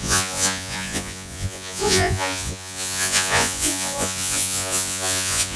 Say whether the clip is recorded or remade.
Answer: remade